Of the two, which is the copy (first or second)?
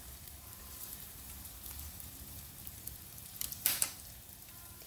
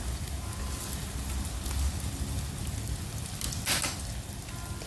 first